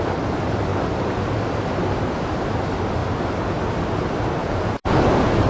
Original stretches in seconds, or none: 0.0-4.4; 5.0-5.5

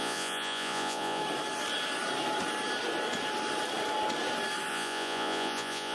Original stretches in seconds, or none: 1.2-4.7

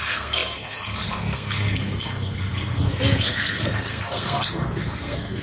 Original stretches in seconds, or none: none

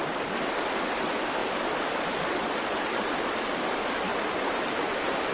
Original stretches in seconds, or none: 0.0-4.1

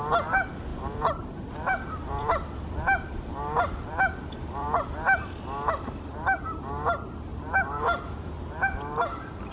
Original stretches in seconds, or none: 0.0-0.7; 5.4-7.3; 8.3-9.5

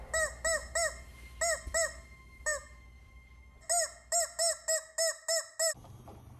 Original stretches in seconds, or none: 0.0-6.4